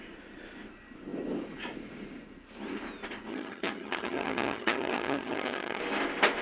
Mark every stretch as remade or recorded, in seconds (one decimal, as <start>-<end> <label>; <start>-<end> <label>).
0.0-3.3 recorded; 3.3-5.8 remade; 5.8-6.4 recorded